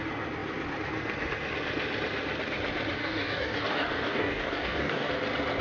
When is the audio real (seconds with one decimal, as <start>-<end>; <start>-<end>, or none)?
0.0-3.0; 5.1-5.6